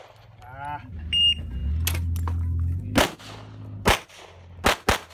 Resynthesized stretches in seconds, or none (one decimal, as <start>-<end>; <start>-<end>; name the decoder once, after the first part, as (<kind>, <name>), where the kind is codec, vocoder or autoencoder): none